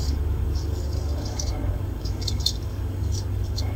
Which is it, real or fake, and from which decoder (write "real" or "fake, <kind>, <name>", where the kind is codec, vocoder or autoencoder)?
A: fake, codec, DAC